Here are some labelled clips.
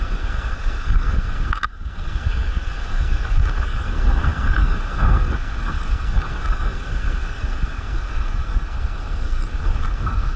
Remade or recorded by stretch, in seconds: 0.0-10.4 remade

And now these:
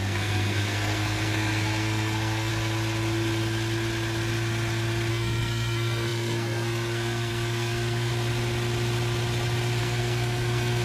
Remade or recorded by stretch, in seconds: 0.0-2.5 remade; 2.5-5.1 recorded; 5.1-8.1 remade; 8.1-9.8 recorded; 9.8-10.8 remade